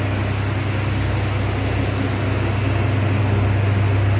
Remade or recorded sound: recorded